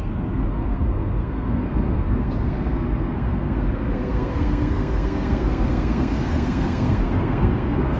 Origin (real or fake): fake